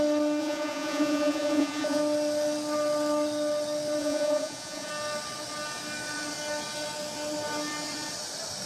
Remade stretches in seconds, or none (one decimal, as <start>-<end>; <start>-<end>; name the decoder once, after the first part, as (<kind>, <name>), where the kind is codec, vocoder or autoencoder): 0.4-2.0 (vocoder, Vocos); 4.0-4.9